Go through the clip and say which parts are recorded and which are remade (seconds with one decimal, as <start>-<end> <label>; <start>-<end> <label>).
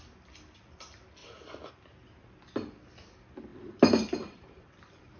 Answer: 0.0-1.2 recorded; 1.2-1.7 remade; 1.7-3.5 recorded; 3.5-5.2 remade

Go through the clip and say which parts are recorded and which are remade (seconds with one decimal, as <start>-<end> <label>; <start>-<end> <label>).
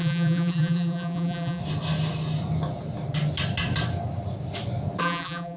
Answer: 0.0-1.6 remade; 1.6-5.0 recorded; 5.0-5.6 remade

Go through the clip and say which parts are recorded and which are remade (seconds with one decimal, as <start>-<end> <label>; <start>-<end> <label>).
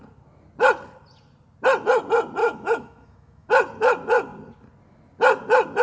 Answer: 0.0-2.4 recorded; 2.4-3.5 remade; 3.5-5.8 recorded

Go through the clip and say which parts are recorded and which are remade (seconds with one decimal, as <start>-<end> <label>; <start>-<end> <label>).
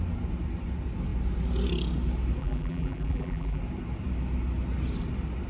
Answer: 0.0-2.4 recorded; 2.4-3.6 remade; 3.6-5.5 recorded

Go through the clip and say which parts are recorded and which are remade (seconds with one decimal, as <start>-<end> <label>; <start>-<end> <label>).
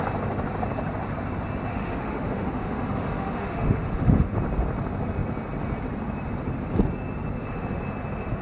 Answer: 0.0-1.7 recorded; 1.7-4.3 remade; 4.3-8.4 recorded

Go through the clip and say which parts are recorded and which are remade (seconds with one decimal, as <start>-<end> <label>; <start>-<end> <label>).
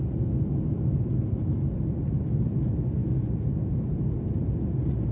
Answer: 0.0-3.0 recorded; 3.0-3.9 remade; 3.9-5.1 recorded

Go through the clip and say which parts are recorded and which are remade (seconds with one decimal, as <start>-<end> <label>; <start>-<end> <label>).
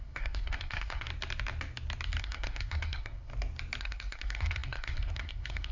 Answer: 0.0-1.1 remade; 1.1-2.2 recorded; 2.2-3.3 remade; 3.3-3.8 recorded; 3.8-5.7 remade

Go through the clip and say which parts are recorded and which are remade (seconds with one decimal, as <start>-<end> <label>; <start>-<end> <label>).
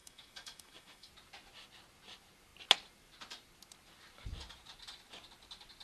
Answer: 0.0-1.1 remade; 1.1-5.8 recorded